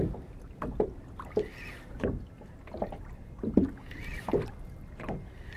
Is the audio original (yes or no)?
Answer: yes